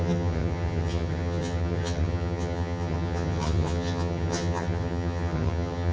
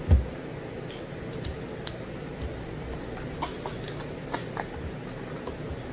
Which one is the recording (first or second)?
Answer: second